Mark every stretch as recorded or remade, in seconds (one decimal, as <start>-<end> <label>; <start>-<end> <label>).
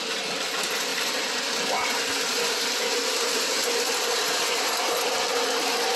0.0-6.0 recorded